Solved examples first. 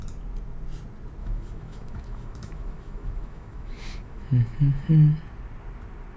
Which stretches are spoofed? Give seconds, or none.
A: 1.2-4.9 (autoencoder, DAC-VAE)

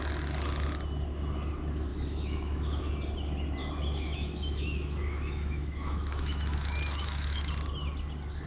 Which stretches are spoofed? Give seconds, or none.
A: 1.9-2.8 (autoencoder, DAC-VAE); 3.6-7.5